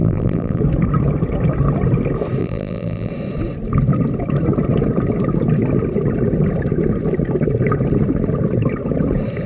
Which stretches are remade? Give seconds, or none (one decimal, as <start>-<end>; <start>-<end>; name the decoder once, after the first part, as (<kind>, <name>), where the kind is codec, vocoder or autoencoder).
0.0-0.6 (vocoder, BigVGAN v2); 2.4-3.1

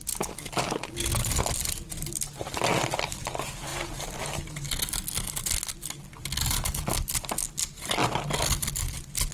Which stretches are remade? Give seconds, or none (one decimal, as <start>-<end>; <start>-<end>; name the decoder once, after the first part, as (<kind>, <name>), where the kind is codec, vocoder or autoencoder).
none

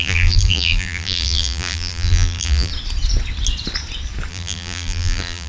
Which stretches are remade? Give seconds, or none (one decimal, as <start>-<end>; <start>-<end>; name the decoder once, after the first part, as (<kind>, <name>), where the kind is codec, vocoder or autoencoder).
0.0-2.7 (vocoder, BigVGAN v2); 4.3-5.5

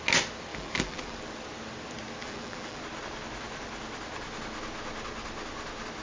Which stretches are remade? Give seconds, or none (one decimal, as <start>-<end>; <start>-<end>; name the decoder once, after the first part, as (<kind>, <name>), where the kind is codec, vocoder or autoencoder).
0.5-1.2 (vocoder, BigVGAN v2); 2.2-2.8

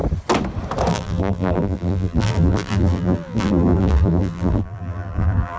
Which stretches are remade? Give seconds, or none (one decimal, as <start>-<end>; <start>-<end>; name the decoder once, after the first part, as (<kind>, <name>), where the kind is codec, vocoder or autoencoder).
0.9-5.6 (vocoder, BigVGAN v2)

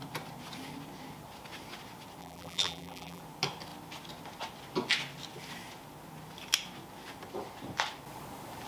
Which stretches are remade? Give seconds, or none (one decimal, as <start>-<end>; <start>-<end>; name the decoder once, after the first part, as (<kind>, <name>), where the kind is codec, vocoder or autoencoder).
2.2-3.2 (vocoder, BigVGAN v2)

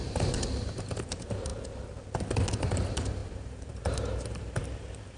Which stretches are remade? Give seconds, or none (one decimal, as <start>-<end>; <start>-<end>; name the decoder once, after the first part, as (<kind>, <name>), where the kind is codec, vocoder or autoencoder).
0.0-1.5 (vocoder, BigVGAN v2); 2.5-5.2

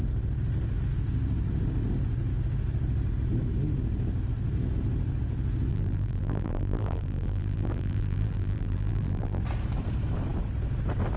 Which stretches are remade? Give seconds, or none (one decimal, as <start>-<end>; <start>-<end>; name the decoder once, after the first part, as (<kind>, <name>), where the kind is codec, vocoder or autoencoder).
5.7-9.4 (vocoder, BigVGAN v2)